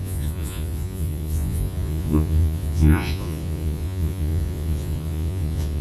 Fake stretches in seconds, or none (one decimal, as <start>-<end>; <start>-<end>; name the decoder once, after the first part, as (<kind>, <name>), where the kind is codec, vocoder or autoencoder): 0.0-5.8 (vocoder, Vocos)